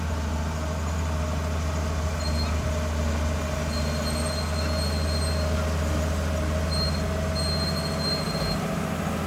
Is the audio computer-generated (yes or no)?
no